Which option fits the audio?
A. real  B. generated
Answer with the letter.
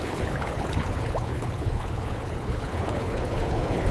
B